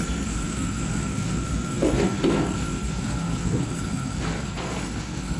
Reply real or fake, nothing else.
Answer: fake